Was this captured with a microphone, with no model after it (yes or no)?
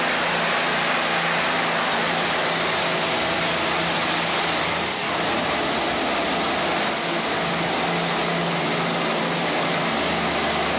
yes